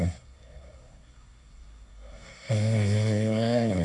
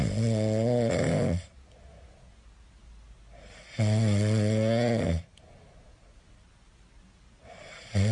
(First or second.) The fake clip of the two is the first